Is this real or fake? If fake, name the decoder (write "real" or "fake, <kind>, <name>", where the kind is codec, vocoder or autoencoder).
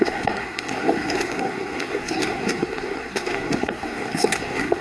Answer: fake, codec, SNAC